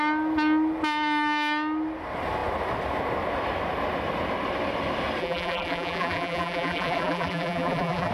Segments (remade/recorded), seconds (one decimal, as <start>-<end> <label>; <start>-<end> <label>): 0.0-5.2 recorded; 5.2-8.1 remade